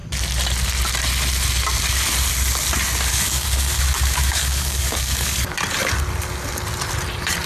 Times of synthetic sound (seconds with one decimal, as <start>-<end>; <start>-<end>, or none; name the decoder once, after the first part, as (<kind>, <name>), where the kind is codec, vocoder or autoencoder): 3.1-5.6 (codec, DAC)